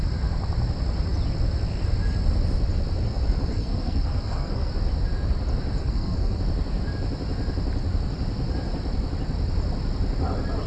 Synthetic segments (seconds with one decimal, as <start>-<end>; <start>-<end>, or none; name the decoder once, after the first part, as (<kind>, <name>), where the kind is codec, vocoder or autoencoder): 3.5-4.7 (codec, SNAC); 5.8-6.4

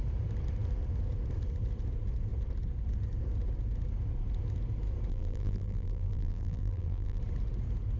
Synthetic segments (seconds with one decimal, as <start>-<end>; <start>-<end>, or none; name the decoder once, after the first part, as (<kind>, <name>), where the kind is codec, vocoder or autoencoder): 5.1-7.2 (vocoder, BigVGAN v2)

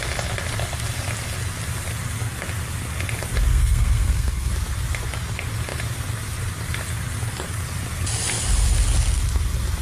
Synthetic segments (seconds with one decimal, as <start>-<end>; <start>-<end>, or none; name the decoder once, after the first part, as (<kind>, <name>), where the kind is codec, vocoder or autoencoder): 3.5-4.5 (codec, SNAC)

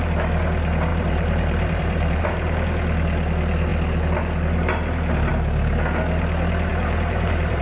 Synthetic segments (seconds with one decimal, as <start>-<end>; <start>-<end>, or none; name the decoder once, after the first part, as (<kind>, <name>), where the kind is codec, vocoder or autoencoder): 0.9-2.2 (vocoder, BigVGAN v2); 6.7-7.6